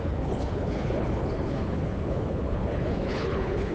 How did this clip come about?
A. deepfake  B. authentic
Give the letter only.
A